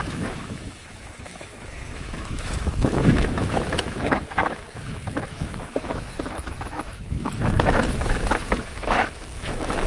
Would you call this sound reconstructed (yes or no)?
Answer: yes